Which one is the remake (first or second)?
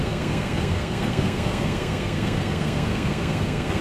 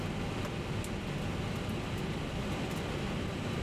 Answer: first